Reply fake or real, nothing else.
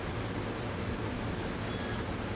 real